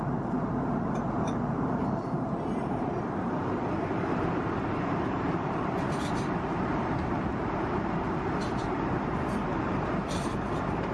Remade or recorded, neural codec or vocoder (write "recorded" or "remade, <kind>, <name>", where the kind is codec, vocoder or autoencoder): remade, vocoder, BigVGAN v2